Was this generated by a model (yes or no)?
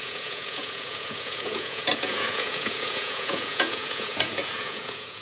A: yes